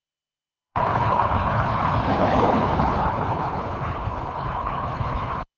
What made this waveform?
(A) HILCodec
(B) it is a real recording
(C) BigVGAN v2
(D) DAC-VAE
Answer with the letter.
A